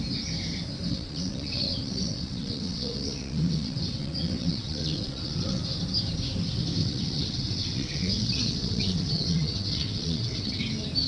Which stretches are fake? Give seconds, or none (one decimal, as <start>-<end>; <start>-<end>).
0.9-5.6; 6.8-10.6